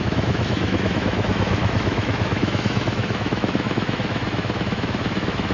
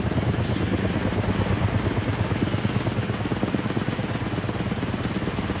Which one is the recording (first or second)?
second